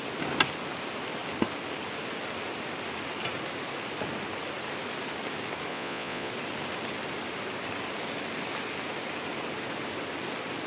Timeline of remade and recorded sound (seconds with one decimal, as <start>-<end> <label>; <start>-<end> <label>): 0.0-5.7 recorded; 5.7-6.3 remade; 6.3-10.7 recorded